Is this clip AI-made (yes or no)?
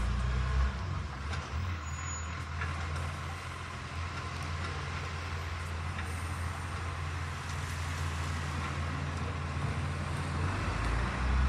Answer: no